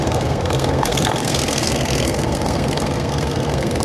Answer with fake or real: fake